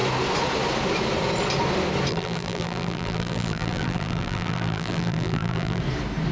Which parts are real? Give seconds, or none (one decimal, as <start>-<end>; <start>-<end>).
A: 0.0-2.1; 5.8-6.3